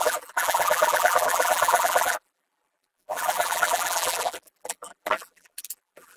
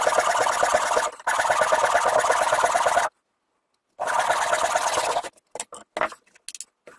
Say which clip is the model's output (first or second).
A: first